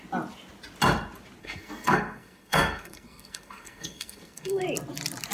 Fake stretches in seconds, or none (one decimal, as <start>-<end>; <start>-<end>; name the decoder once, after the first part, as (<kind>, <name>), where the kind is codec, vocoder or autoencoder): 1.4-4.6 (codec, SNAC)